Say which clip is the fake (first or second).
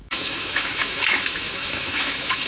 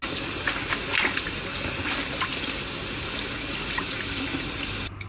first